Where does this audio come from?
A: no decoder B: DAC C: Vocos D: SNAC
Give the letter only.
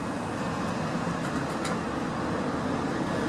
A